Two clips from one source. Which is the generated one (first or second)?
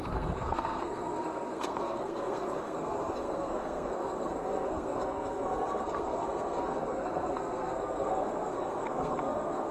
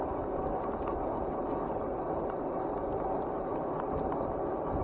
first